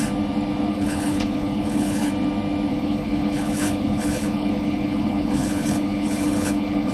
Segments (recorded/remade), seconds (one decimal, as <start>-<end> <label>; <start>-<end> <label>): 0.0-0.7 recorded; 0.7-2.1 remade; 2.1-2.7 recorded; 2.7-6.9 remade